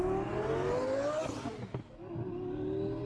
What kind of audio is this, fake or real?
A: real